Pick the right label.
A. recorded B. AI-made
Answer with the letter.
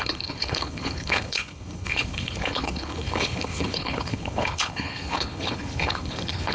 B